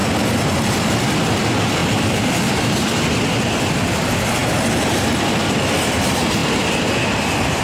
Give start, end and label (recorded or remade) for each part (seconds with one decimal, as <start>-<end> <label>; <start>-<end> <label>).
0.0-1.8 recorded; 1.8-3.2 remade; 3.2-6.4 recorded; 6.4-7.6 remade